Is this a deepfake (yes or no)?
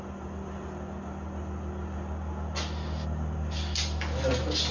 no